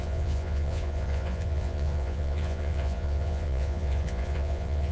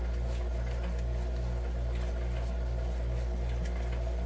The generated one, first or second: first